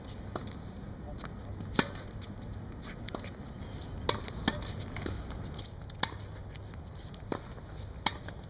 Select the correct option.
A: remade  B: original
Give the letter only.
B